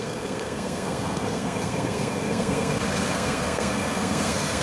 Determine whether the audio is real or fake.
fake